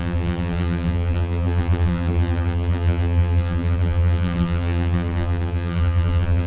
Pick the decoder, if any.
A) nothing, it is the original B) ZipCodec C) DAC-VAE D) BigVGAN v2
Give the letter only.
D